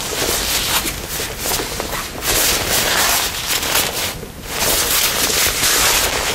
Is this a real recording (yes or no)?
yes